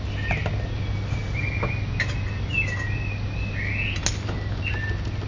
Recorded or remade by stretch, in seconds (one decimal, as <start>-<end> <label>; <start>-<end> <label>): 0.0-5.3 recorded